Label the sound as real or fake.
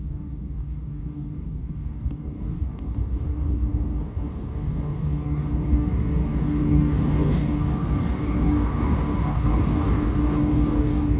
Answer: fake